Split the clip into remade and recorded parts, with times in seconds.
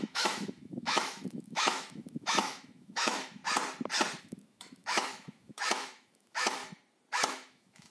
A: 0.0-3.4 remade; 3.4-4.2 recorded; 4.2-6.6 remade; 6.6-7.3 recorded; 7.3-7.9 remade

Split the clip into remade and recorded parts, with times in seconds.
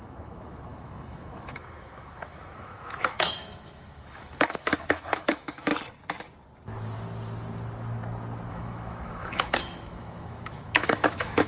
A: 0.0-5.7 remade; 5.7-8.5 recorded; 8.5-11.5 remade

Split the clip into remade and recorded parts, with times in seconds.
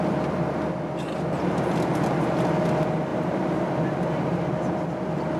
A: 0.0-3.1 recorded; 3.1-3.7 remade; 3.7-5.4 recorded